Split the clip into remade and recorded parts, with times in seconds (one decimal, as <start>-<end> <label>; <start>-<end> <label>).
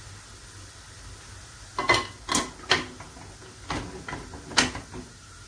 0.0-5.5 recorded